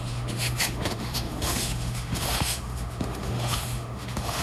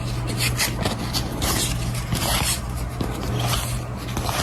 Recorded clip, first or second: second